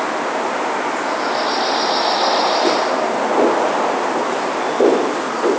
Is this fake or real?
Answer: real